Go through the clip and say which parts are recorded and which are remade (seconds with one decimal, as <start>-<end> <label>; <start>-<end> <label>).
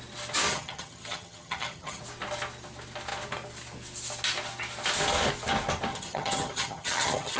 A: 0.0-0.5 recorded; 0.5-2.0 remade; 2.0-5.9 recorded; 5.9-7.4 remade